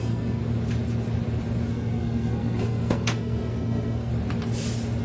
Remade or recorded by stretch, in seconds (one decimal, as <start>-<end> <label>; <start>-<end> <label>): 0.0-0.4 remade; 0.4-1.7 recorded; 1.7-4.1 remade; 4.1-5.0 recorded